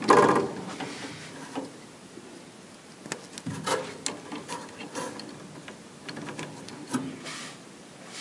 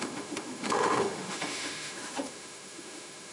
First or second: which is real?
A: first